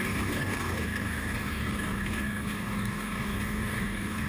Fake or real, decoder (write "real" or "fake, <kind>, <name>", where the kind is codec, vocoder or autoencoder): fake, codec, DAC